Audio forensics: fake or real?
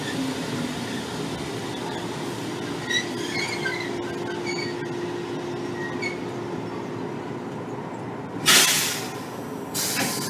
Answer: real